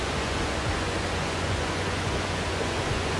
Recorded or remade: remade